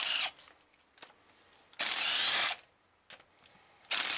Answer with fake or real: real